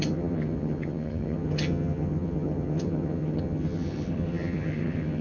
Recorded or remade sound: remade